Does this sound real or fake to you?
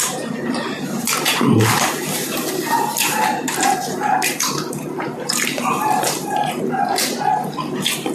fake